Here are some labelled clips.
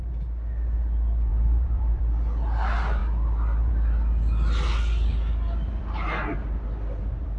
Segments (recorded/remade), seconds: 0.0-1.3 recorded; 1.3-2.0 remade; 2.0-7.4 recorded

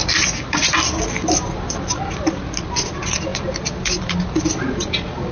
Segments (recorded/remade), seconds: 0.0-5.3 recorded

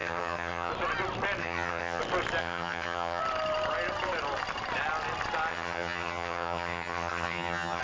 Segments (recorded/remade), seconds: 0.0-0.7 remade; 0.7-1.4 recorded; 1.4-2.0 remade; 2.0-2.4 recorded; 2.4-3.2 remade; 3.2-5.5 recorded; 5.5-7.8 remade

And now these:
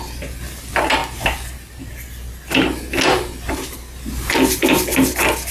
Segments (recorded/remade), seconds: 0.0-5.5 recorded

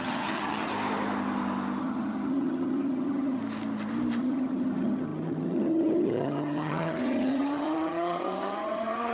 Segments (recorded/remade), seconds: 0.0-0.7 remade; 0.7-1.8 recorded; 1.8-3.4 remade; 3.4-4.2 recorded; 4.2-9.1 remade

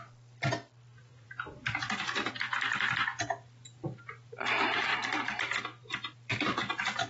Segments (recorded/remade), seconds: 0.0-1.1 recorded; 1.1-2.3 remade; 2.3-7.1 recorded

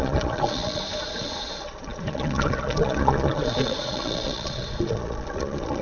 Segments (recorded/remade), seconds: 0.0-5.8 remade

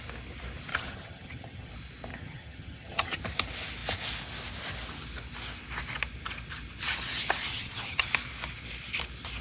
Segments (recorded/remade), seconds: 0.0-0.7 recorded; 0.7-1.7 remade; 1.7-2.1 recorded; 2.1-3.2 remade; 3.2-7.5 recorded; 7.5-8.1 remade; 8.1-9.4 recorded